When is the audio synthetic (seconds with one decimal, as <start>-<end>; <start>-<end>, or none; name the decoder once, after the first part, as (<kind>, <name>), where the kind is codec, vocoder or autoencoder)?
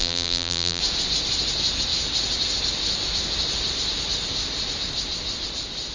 0.0-0.8 (vocoder, BigVGAN v2)